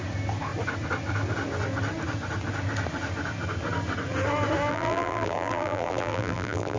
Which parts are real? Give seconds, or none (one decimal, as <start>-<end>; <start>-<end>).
0.0-4.7